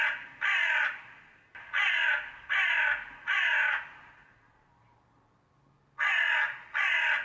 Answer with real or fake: fake